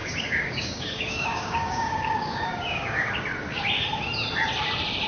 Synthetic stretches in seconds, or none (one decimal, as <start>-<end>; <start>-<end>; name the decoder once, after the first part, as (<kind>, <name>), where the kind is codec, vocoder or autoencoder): 0.0-3.1 (codec, DAC)